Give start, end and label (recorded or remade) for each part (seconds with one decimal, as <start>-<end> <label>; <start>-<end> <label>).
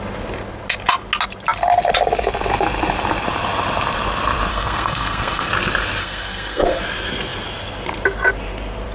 0.0-4.5 recorded; 4.5-5.5 remade; 5.5-6.0 recorded; 6.0-6.8 remade; 6.8-8.9 recorded